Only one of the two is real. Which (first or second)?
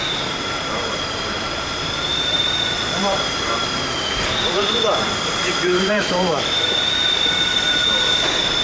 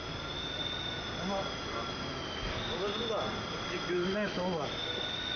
second